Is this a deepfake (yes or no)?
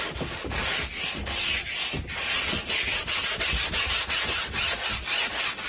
no